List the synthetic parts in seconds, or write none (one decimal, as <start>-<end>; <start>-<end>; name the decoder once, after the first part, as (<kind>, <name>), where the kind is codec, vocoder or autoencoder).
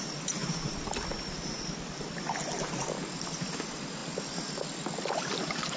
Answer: none